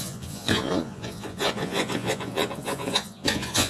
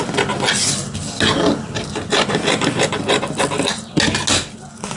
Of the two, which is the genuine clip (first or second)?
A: second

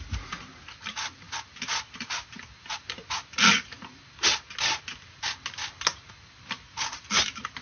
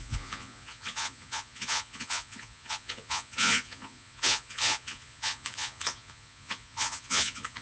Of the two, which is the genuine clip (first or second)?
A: first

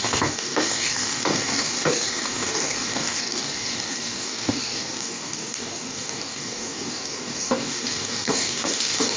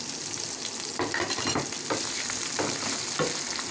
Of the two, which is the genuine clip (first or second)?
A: second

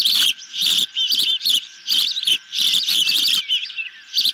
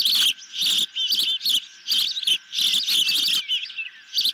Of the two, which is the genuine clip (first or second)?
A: second